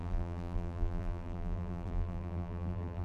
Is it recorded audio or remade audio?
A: remade